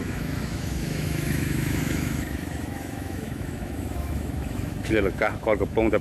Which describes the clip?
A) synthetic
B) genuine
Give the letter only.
A